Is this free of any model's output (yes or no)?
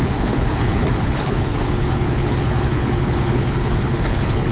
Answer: no